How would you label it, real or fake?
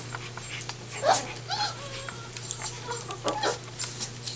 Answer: real